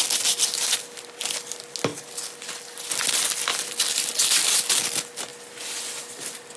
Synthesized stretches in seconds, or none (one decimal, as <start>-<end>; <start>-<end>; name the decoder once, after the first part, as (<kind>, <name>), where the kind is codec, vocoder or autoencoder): none